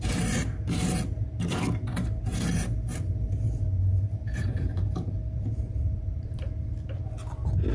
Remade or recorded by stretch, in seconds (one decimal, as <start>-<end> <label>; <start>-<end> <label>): 0.0-1.9 recorded; 1.9-6.5 remade; 6.5-7.7 recorded